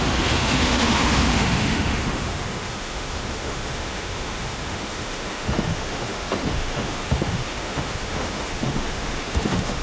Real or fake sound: fake